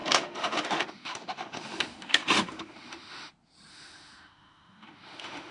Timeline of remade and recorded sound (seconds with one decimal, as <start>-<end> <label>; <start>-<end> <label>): 0.0-3.3 remade; 3.3-3.7 recorded; 3.7-5.5 remade